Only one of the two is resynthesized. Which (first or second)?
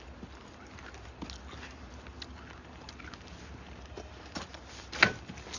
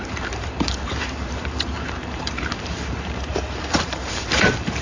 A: second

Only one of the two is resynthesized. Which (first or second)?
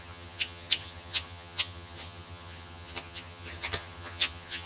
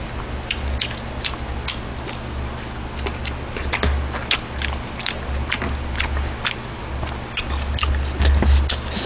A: first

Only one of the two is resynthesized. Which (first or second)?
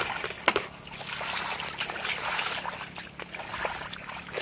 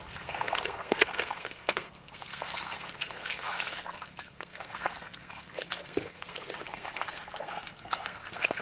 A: second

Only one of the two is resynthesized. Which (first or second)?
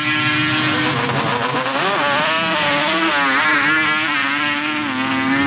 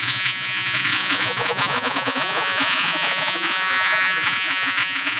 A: second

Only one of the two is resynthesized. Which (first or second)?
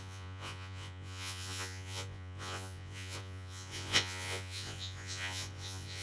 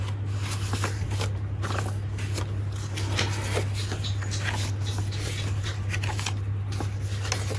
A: first